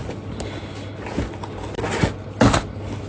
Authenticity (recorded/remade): recorded